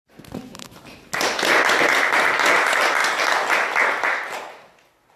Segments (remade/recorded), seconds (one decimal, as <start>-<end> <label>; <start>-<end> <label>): 0.0-5.2 recorded